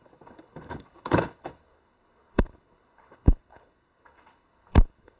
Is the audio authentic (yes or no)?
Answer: no